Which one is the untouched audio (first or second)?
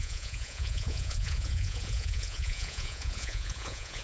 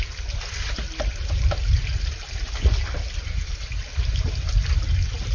second